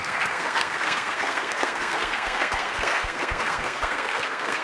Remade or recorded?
remade